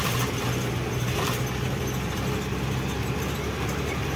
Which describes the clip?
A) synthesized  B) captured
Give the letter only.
B